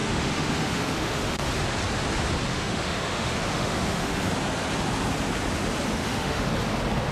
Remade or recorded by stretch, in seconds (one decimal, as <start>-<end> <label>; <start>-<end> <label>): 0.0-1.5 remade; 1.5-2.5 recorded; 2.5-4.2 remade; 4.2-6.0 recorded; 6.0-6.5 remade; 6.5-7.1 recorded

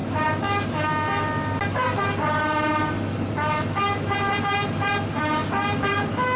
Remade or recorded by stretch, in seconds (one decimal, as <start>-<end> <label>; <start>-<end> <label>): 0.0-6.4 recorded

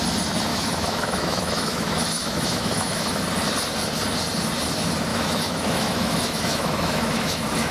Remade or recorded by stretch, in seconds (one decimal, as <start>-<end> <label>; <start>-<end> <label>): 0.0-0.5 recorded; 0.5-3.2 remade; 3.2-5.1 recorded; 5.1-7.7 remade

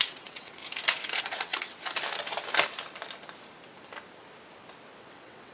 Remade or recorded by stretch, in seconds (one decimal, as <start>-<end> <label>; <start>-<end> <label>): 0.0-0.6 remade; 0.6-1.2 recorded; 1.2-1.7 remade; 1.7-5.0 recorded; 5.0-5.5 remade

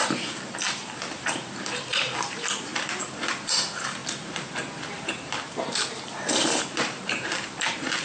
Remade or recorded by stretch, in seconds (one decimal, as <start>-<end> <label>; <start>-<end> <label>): 0.0-4.0 remade; 4.0-6.6 recorded; 6.6-8.0 remade

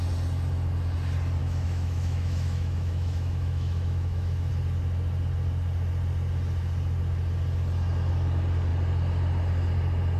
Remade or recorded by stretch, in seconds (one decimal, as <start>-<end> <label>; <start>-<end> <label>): 0.0-1.4 recorded; 1.4-4.5 remade; 4.5-10.2 recorded